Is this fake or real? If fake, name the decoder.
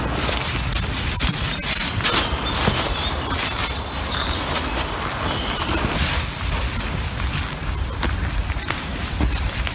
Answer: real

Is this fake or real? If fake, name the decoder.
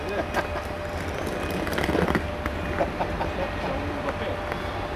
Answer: real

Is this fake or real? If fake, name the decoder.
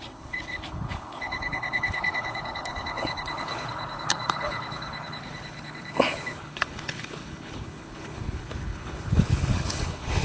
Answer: fake, codec, HILCodec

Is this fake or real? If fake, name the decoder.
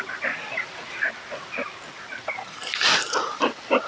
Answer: real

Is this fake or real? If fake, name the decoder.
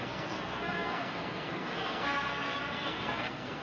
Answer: fake, codec, SNAC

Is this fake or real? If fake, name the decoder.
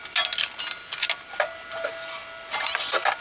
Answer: real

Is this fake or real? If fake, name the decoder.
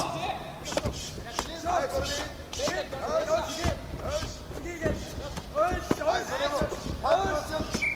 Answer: real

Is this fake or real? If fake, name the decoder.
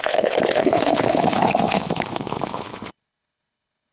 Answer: fake, codec, HILCodec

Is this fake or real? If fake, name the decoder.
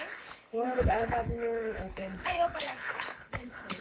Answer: fake, codec, HILCodec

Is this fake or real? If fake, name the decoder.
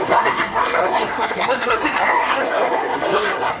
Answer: fake, codec, SNAC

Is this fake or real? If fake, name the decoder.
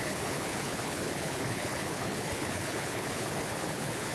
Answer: fake, codec, HILCodec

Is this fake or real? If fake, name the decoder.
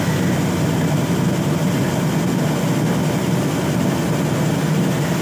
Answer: real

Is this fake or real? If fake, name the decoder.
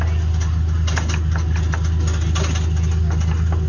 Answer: real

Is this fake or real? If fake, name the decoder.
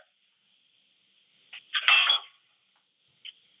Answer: real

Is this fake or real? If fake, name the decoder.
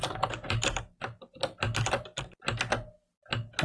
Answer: real